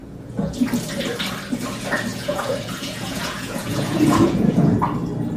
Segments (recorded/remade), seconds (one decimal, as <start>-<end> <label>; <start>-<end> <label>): 0.0-0.7 remade; 0.7-2.1 recorded; 2.1-4.8 remade; 4.8-5.4 recorded